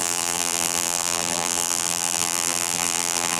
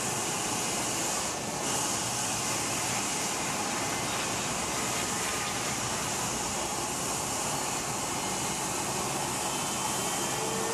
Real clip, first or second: second